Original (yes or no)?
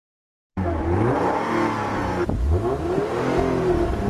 yes